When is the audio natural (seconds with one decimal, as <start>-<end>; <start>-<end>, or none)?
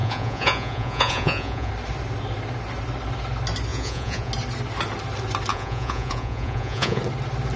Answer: 1.7-3.7; 4.3-5.5; 7.0-7.6